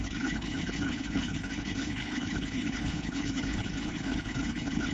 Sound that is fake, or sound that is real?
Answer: fake